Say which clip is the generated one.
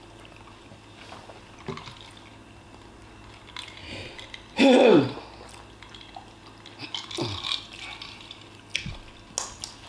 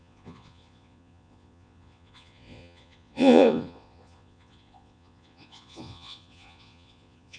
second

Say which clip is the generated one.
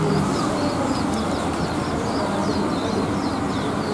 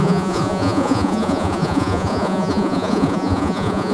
second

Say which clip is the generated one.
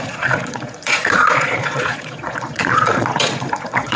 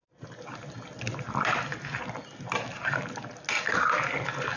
first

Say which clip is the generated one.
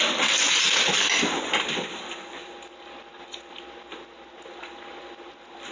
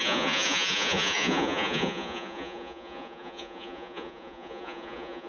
second